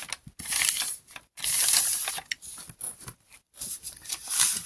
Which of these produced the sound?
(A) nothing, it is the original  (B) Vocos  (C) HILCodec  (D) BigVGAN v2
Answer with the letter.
D